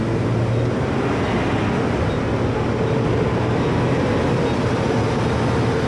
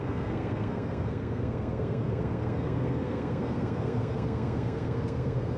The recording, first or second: first